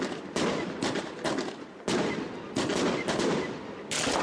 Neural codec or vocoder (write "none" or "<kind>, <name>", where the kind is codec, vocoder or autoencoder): none